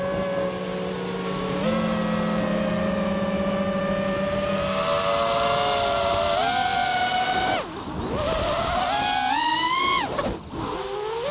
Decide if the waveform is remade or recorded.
recorded